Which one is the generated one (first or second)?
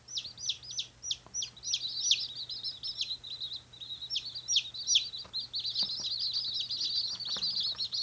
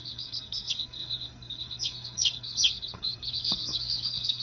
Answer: second